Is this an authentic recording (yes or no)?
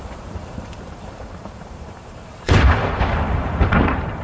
no